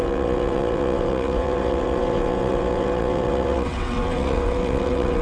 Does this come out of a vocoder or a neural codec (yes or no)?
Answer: yes